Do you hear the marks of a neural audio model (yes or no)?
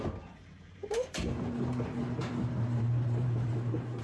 yes